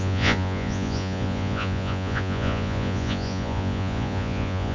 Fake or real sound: fake